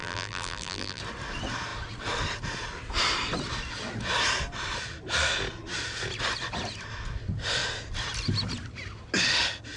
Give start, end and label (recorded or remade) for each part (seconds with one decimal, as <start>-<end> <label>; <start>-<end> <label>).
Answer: 0.0-1.0 remade; 1.0-9.8 recorded